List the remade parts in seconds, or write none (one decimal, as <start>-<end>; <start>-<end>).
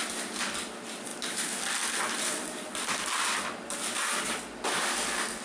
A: none